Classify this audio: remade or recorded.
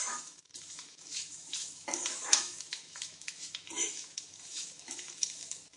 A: remade